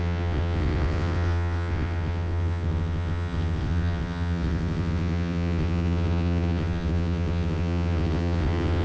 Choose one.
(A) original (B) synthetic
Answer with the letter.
B